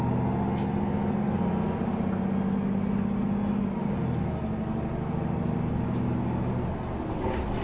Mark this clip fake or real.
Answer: real